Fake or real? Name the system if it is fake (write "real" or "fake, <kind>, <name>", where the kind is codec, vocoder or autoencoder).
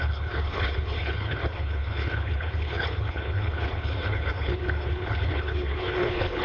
fake, codec, HILCodec